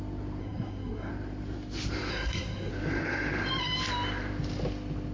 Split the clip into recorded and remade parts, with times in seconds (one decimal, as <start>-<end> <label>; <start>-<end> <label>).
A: 0.0-0.4 recorded; 0.4-1.1 remade; 1.1-2.1 recorded; 2.1-2.7 remade; 2.7-5.1 recorded